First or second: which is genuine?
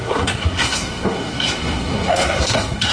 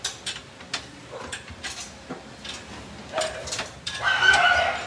second